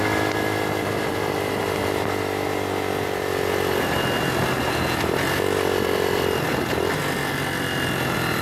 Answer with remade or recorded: recorded